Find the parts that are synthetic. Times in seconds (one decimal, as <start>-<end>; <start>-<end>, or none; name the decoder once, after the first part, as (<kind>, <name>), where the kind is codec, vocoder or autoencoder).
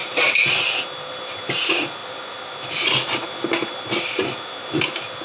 none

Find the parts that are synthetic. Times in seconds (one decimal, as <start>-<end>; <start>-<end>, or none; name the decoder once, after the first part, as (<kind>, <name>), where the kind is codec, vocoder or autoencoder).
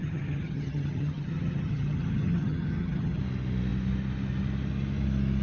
0.0-3.2 (vocoder, HiFi-GAN)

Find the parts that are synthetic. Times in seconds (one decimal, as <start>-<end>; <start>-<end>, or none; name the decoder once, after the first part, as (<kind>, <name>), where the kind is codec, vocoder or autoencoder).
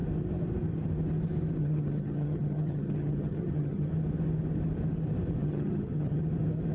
1.6-3.9 (vocoder, HiFi-GAN); 5.4-6.2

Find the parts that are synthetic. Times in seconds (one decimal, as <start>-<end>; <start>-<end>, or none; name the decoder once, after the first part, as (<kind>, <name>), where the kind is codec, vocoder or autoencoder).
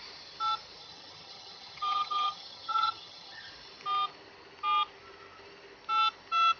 0.8-3.5 (vocoder, HiFi-GAN)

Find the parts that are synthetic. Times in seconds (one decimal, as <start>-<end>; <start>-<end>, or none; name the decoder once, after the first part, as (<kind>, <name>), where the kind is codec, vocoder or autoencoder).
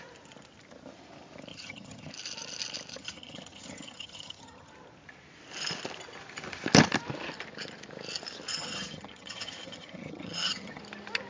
1.5-2.1 (vocoder, HiFi-GAN); 2.9-4.7; 8.5-10.8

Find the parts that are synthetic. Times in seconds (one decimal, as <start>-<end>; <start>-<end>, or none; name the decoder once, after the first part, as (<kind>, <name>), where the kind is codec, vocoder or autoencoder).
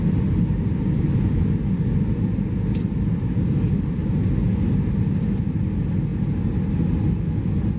none